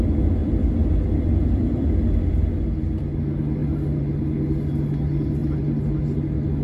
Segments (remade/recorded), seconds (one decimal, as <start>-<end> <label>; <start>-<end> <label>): 0.0-0.4 recorded; 0.4-2.3 remade; 2.3-3.6 recorded; 3.6-4.3 remade; 4.3-6.6 recorded